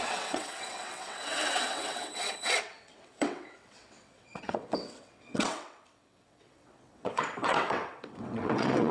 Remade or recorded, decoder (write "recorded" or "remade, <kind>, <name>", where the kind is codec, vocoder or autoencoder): remade, vocoder, WaveNeXt